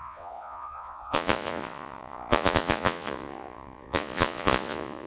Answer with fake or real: fake